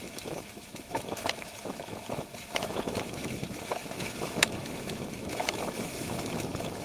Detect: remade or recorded remade